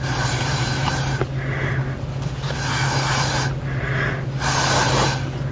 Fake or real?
real